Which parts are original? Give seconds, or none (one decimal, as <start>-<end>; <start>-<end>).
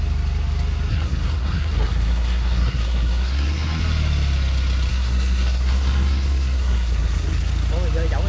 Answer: 0.0-0.9; 3.8-4.9; 7.5-8.3